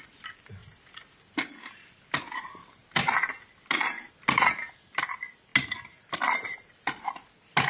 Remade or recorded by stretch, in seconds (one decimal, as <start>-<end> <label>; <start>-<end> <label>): 0.0-7.7 recorded

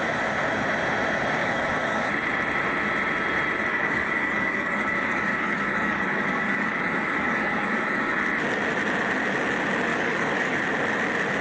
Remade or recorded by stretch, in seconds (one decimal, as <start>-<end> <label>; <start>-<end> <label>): 0.0-1.4 recorded; 1.4-2.1 remade; 2.1-3.7 recorded; 3.7-8.1 remade; 8.1-9.9 recorded; 9.9-10.6 remade; 10.6-11.4 recorded

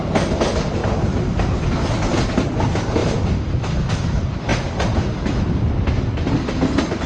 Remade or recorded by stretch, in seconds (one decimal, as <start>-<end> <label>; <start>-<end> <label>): 0.0-0.8 remade; 0.8-1.5 recorded; 1.5-3.0 remade; 3.0-3.9 recorded; 3.9-4.5 remade; 4.5-5.8 recorded; 5.8-7.1 remade

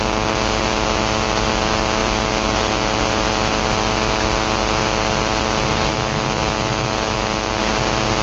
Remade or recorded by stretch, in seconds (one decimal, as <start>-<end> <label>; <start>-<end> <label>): 0.0-5.9 recorded; 5.9-7.6 remade; 7.6-8.2 recorded

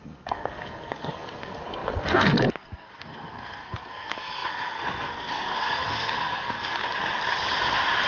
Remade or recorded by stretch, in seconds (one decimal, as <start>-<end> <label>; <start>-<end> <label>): 0.0-6.8 remade; 6.8-8.1 recorded

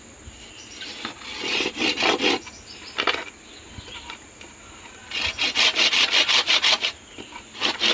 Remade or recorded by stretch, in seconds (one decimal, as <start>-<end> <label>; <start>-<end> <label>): 0.0-7.9 recorded

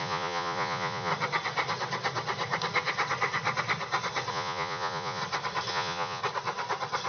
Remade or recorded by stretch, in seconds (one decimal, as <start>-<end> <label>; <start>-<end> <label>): 0.0-1.1 remade; 1.1-4.3 recorded; 4.3-5.2 remade; 5.2-5.7 recorded; 5.7-6.2 remade; 6.2-7.1 recorded

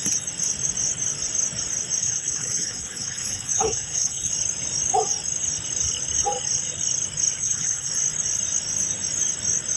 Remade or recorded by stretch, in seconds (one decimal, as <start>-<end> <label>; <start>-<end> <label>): 0.0-2.0 recorded; 2.0-4.3 remade; 4.3-7.4 recorded; 7.4-7.9 remade; 7.9-9.8 recorded